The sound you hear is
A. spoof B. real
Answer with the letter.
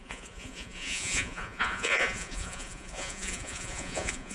A